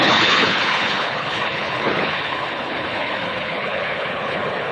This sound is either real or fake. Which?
fake